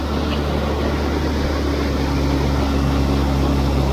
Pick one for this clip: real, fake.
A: real